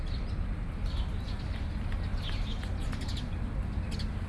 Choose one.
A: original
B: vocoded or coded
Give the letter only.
A